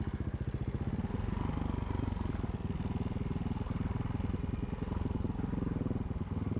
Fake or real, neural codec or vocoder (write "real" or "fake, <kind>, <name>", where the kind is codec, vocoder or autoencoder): real